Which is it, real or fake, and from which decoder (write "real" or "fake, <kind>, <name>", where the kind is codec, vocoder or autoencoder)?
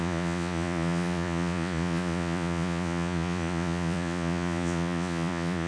fake, vocoder, Vocos